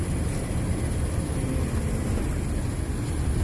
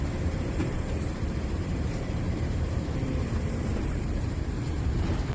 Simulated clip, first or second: second